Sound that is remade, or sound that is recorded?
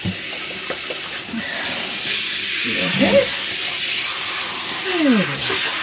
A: recorded